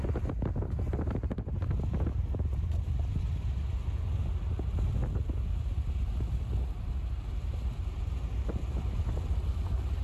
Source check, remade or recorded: recorded